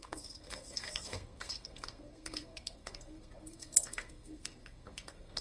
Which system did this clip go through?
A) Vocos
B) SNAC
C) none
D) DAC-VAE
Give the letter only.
B